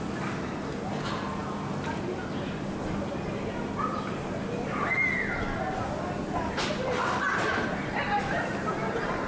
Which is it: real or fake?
real